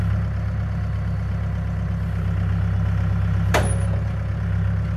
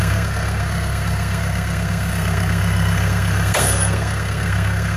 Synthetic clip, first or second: second